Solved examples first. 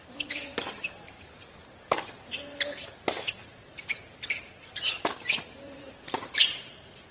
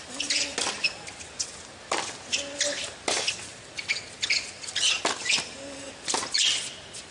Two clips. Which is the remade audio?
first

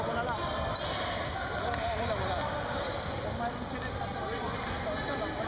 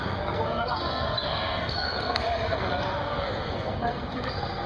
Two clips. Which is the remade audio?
second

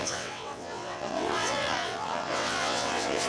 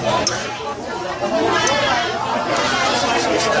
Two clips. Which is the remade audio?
first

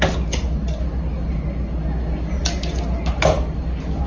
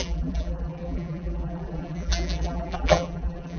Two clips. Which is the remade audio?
second